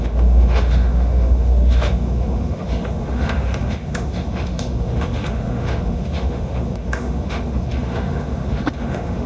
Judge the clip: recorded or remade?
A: remade